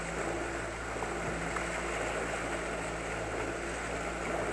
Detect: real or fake real